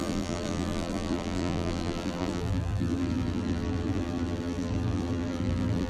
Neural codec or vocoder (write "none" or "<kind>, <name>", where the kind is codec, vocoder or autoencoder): vocoder, BigVGAN v2